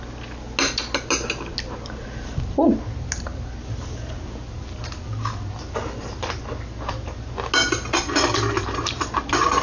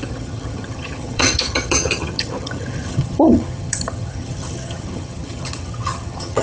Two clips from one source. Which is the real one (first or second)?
first